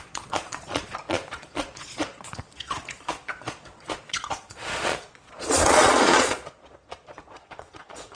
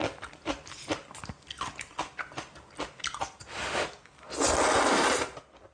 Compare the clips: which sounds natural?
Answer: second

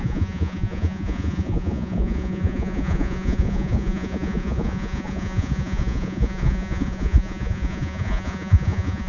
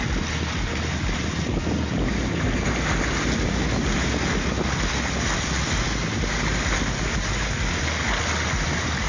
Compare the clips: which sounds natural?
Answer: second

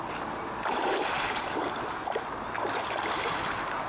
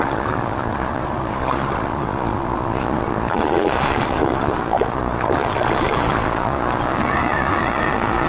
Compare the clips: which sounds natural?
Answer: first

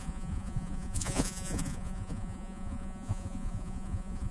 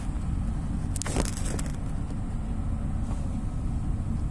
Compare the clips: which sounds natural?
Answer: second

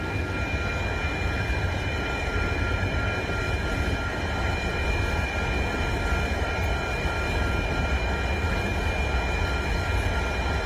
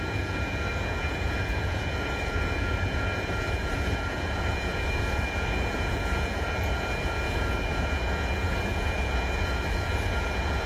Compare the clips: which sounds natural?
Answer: first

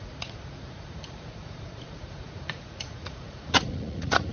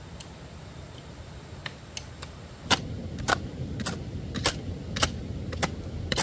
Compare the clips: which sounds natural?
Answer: second